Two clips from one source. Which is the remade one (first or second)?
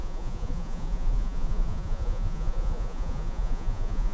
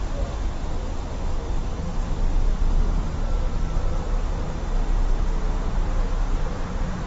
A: first